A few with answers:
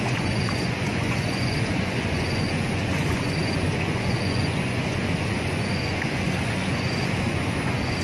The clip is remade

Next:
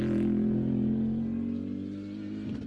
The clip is recorded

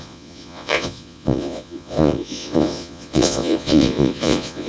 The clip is remade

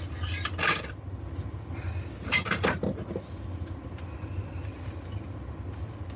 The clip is recorded